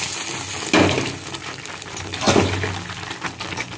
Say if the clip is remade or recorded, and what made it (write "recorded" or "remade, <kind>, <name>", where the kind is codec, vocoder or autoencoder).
recorded